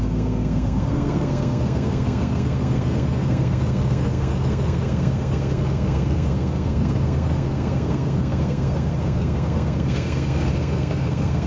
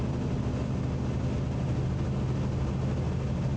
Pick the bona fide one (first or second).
second